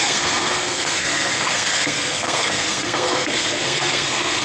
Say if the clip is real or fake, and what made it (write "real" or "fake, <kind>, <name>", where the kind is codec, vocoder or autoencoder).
fake, codec, SNAC